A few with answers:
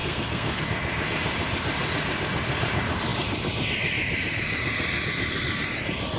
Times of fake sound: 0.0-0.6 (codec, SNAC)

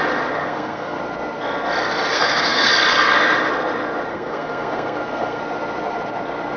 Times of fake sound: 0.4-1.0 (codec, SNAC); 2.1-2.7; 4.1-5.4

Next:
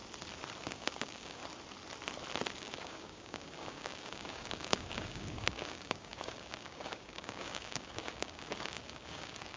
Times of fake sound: 0.7-1.4 (codec, DAC); 2.6-9.6

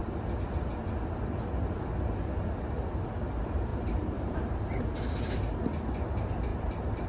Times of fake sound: 3.7-4.8 (vocoder, BigVGAN v2); 6.5-7.1

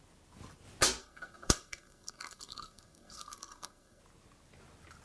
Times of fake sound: 1.0-4.0 (codec, SNAC)

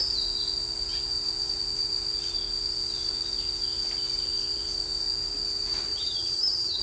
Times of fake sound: 5.9-6.8 (vocoder, HiFi-GAN)

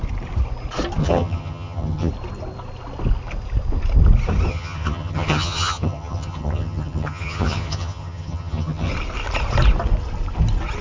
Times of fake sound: 1.0-2.1 (vocoder, HiFi-GAN); 4.5-8.9

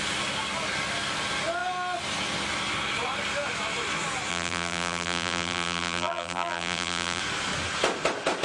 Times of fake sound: 4.3-7.2 (vocoder, BigVGAN v2)